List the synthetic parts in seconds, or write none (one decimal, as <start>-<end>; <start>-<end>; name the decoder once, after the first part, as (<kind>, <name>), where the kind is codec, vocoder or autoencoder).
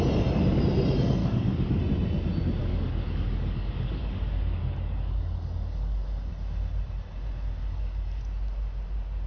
1.2-1.8 (codec, DAC); 2.6-6.3; 7.6-8.2